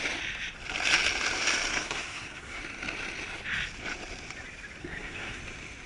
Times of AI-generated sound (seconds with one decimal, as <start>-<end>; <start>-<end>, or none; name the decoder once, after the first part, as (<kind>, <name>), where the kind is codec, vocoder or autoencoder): 1.7-2.6 (codec, SNAC); 4.8-5.4